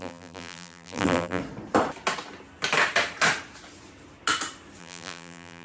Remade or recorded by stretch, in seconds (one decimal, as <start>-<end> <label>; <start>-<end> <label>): 0.0-1.4 remade; 1.4-4.8 recorded; 4.8-5.6 remade